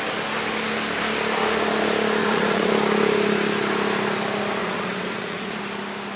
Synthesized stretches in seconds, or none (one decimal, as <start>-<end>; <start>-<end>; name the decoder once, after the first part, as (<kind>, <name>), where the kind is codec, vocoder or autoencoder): 2.2-2.7 (vocoder, Vocos); 4.6-5.6